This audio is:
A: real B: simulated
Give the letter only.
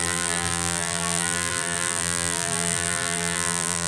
B